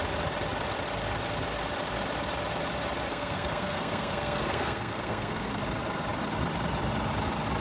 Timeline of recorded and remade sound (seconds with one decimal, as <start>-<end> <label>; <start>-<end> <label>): 0.0-3.1 recorded; 3.1-5.6 remade; 5.6-7.6 recorded